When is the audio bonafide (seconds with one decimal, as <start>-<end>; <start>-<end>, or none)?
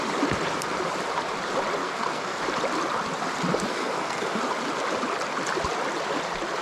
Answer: 0.0-1.8; 2.4-3.7; 4.4-6.6